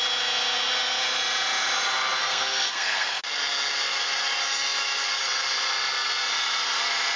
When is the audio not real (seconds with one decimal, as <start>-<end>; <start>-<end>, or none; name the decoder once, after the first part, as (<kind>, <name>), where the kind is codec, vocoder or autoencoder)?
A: 2.2-3.2 (codec, SNAC)